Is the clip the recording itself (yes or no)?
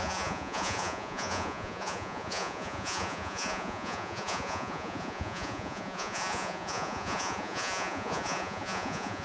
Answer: no